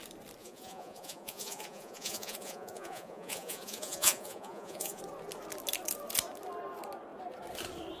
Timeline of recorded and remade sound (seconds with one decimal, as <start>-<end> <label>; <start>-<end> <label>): 0.0-0.4 recorded; 0.4-5.0 remade; 5.0-8.0 recorded